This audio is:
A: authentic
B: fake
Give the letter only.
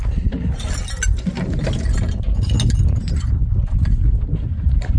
A